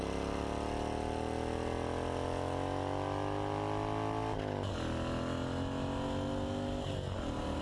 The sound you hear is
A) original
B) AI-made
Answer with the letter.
A